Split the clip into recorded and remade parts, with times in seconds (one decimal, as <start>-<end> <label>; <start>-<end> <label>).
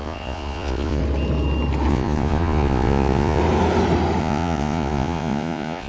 0.0-1.0 remade; 1.0-1.9 recorded; 1.9-3.4 remade; 3.4-4.2 recorded; 4.2-5.9 remade